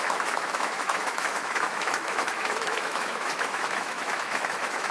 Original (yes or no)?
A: no